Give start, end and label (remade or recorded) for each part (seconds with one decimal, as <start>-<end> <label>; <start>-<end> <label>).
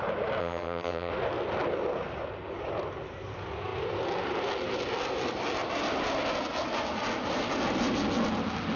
0.0-0.4 recorded; 0.4-1.1 remade; 1.1-8.8 recorded